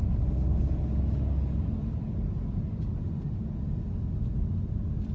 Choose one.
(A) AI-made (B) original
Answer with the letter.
B